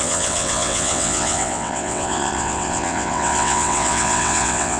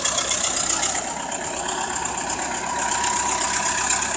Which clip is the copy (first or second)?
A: first